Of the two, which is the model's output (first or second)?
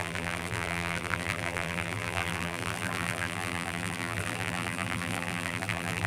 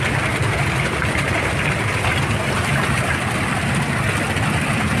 first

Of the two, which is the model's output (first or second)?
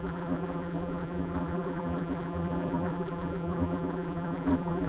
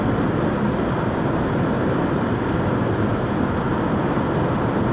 first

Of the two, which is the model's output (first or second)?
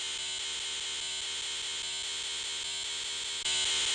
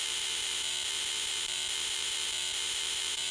second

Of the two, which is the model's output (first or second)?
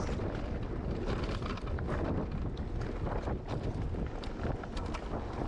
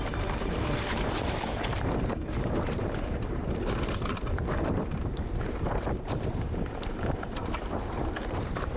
second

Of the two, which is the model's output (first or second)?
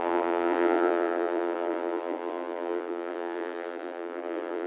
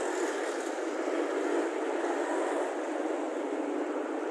first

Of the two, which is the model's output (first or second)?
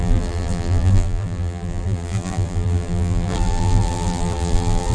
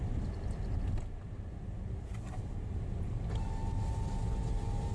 first